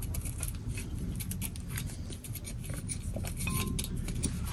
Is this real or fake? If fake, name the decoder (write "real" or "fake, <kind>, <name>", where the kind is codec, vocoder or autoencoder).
real